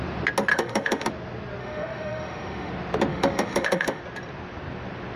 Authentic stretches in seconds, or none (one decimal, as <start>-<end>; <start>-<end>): 0.0-0.5; 1.1-1.6; 2.7-3.1; 4.0-5.2